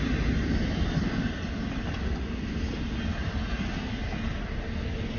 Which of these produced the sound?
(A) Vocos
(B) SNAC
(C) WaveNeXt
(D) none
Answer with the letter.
D